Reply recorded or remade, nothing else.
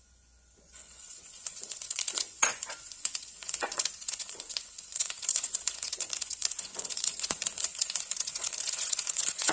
remade